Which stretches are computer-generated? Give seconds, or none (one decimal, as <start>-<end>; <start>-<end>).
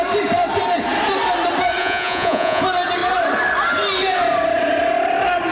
1.8-2.6